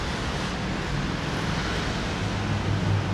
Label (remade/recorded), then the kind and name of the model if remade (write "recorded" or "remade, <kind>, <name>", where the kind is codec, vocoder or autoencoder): recorded